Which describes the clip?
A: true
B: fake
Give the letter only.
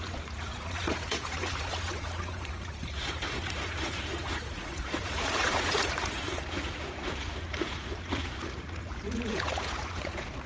B